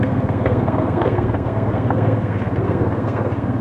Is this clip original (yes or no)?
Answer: no